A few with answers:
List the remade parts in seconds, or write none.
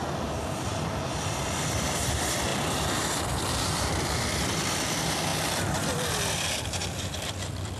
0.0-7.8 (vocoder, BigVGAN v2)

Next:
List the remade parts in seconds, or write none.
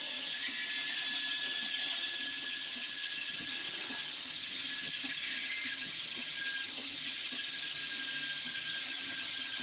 0.0-0.5 (vocoder, HiFi-GAN); 1.3-7.8; 8.4-9.6